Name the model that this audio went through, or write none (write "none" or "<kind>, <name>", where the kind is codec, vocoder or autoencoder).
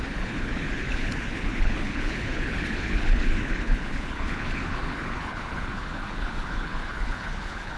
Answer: codec, HILCodec